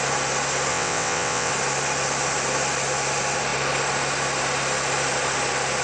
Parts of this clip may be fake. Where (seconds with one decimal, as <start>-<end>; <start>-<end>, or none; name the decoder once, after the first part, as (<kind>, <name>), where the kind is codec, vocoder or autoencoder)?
0.7-1.5 (vocoder, WaveNeXt)

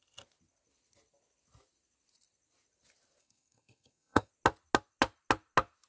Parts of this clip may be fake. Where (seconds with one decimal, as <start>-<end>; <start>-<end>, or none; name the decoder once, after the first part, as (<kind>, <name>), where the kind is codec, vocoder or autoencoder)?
3.2-4.3 (codec, SNAC)

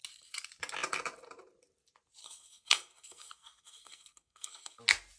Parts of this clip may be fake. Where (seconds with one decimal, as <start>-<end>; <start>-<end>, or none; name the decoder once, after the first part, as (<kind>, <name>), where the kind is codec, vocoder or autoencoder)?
2.2-4.8 (codec, SNAC)

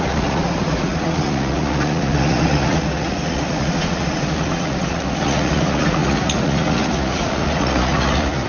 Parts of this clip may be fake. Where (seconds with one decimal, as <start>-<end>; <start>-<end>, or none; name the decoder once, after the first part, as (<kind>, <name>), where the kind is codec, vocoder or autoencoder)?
0.0-8.5 (vocoder, Vocos)

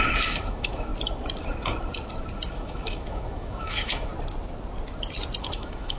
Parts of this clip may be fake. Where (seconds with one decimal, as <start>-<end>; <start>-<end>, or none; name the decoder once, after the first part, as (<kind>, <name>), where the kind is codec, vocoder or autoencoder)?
0.0-0.9 (autoencoder, DAC-VAE); 2.5-4.1; 5.4-6.0

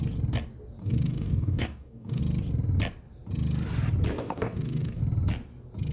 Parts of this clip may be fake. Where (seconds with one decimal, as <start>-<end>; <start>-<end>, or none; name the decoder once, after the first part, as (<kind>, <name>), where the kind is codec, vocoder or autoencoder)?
0.8-2.2 (codec, DAC); 4.2-5.0